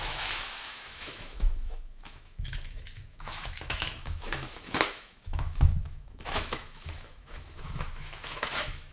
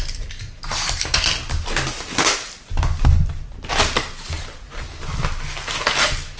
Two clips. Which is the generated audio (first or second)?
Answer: first